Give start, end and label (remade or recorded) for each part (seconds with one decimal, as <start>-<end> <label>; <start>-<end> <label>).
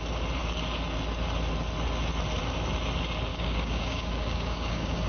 0.0-3.3 recorded; 3.3-5.1 remade